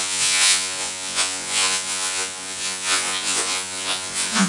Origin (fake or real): fake